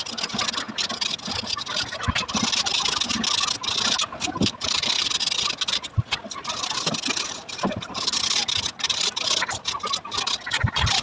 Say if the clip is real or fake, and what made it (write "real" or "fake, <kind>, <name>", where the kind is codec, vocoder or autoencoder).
real